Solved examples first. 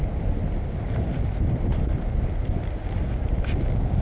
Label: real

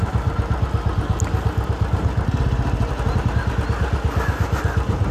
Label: real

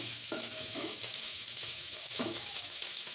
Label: fake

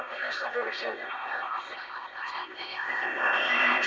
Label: fake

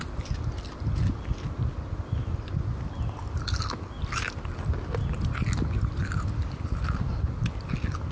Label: real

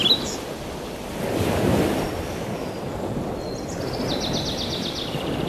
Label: real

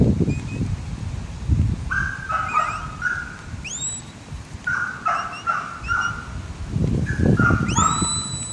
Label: real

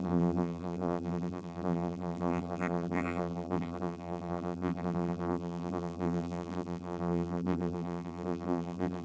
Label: fake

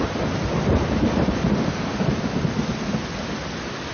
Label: real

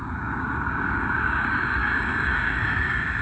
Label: fake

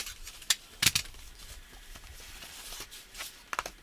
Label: real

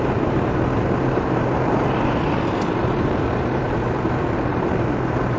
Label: fake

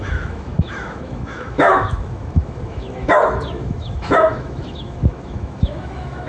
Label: fake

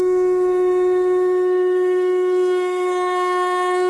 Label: fake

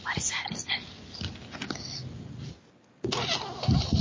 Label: real